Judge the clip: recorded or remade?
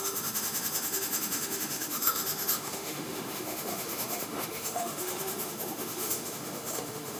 remade